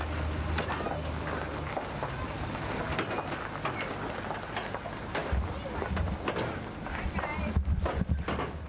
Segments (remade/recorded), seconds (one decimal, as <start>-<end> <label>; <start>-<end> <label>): 0.0-8.7 recorded